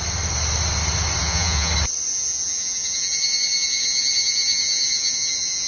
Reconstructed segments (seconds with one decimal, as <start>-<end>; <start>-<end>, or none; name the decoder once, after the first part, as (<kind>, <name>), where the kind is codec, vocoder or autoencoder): 1.2-1.7 (vocoder, Vocos); 2.1-5.7